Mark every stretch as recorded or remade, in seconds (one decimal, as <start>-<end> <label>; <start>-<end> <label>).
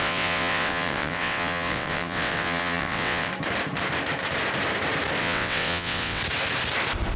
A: 0.0-3.3 remade; 3.3-5.2 recorded; 5.2-6.2 remade; 6.2-7.2 recorded